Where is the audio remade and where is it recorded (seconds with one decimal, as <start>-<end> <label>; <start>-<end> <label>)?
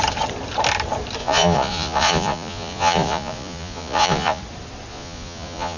0.0-1.2 recorded; 1.2-4.4 remade; 4.4-4.9 recorded; 4.9-5.8 remade